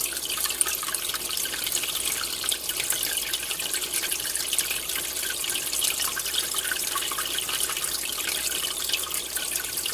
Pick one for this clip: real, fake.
fake